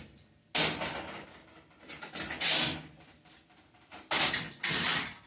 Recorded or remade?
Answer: recorded